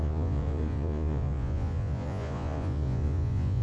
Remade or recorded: remade